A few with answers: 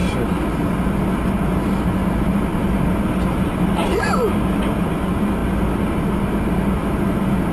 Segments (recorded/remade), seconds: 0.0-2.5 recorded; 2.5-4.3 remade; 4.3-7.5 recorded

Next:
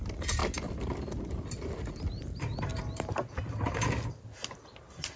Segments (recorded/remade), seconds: 0.0-5.2 recorded

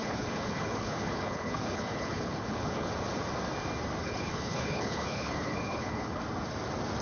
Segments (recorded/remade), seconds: 0.0-2.9 remade; 2.9-4.0 recorded; 4.0-6.2 remade; 6.2-7.0 recorded

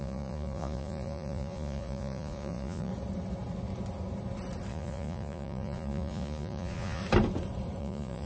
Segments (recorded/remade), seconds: 0.0-2.9 remade; 2.9-4.7 recorded; 4.7-7.0 remade; 7.0-7.8 recorded; 7.8-8.3 remade

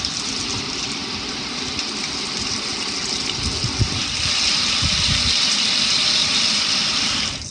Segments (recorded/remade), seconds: 0.0-7.5 recorded